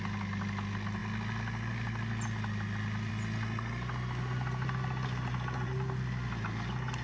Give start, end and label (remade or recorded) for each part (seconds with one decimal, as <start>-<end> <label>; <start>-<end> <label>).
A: 0.0-7.0 recorded